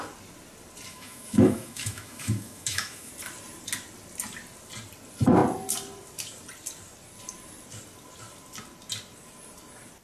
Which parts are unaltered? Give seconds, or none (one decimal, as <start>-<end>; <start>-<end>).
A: 0.0-0.9; 3.1-10.0